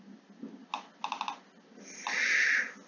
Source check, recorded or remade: recorded